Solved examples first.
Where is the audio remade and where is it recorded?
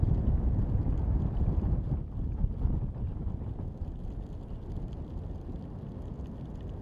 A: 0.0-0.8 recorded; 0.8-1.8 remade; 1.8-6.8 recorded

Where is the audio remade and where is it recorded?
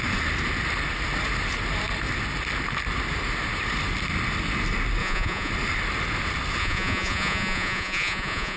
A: 0.0-5.0 recorded; 5.0-5.5 remade; 5.5-6.6 recorded; 6.6-8.6 remade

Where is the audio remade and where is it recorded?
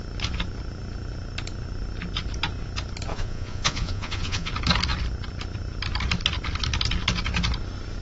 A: 0.0-3.1 recorded; 3.1-4.5 remade; 4.5-8.0 recorded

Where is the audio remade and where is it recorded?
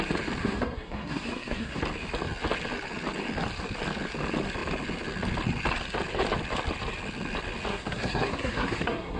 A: 0.0-0.4 recorded; 0.4-1.8 remade; 1.8-7.7 recorded; 7.7-9.2 remade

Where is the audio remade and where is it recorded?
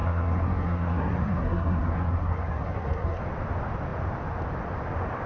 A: 0.0-3.2 remade; 3.2-5.3 recorded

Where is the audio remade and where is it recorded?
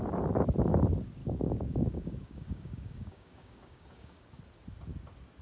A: 0.0-1.2 recorded; 1.2-4.3 remade; 4.3-5.4 recorded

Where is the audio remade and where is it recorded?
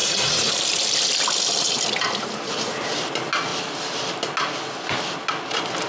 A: 0.0-0.5 remade; 0.5-5.9 recorded